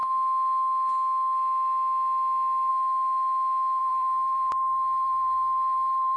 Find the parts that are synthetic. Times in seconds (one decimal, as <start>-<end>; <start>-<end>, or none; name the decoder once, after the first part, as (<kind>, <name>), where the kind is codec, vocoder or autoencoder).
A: 3.8-6.2 (vocoder, BigVGAN v2)